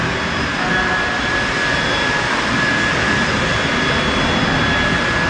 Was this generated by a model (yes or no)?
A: no